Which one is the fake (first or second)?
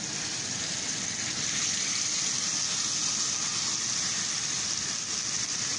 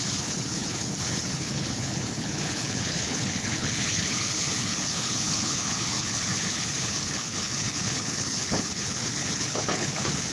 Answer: second